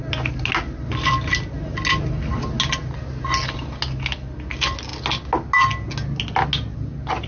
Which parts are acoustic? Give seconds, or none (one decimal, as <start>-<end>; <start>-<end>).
0.0-7.3